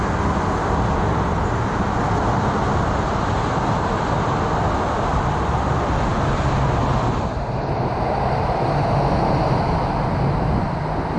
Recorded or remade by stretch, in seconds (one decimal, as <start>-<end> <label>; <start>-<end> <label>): 0.0-11.2 recorded